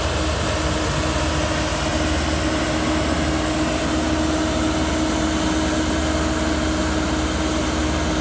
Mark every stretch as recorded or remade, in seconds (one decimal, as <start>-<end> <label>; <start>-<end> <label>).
0.0-8.2 recorded